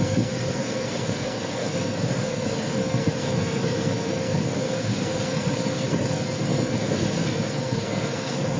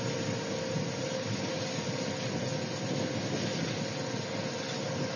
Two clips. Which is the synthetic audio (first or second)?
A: first